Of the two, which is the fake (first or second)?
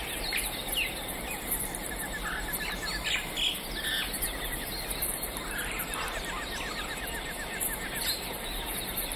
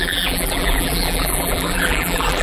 second